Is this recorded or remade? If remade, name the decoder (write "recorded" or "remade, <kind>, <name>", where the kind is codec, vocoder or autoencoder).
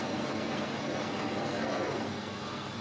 remade, codec, SNAC